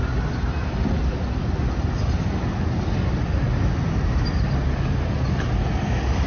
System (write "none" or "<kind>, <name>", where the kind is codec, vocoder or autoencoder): none